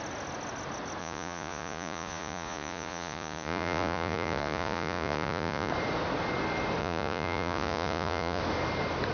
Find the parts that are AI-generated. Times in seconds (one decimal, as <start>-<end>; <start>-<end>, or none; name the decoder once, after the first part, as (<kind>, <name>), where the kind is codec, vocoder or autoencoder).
1.0-5.7 (vocoder, Vocos); 6.8-8.4

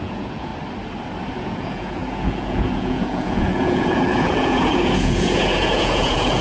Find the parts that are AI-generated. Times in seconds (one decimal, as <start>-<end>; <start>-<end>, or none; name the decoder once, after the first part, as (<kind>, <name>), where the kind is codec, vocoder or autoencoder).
0.0-0.5 (vocoder, Vocos); 1.4-6.4

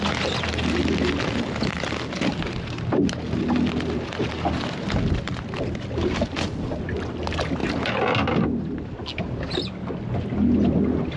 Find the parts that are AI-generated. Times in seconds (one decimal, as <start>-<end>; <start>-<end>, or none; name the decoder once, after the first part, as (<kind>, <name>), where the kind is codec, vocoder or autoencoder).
none

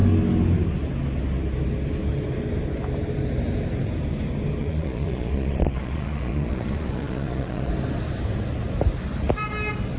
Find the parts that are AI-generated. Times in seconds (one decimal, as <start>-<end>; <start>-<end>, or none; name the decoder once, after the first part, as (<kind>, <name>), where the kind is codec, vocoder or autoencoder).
4.6-7.7 (vocoder, Vocos)

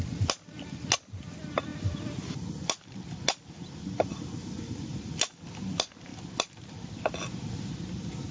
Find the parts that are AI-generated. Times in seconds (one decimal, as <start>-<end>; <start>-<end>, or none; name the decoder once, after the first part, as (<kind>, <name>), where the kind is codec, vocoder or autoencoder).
none

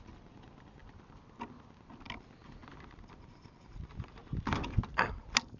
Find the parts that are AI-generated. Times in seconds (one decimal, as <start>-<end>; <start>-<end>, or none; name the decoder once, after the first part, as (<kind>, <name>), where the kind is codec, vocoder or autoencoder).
none